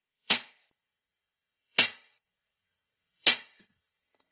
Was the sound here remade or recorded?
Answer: remade